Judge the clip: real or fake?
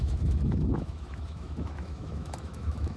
fake